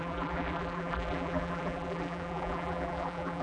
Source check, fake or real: fake